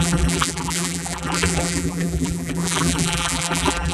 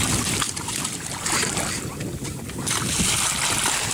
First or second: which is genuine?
second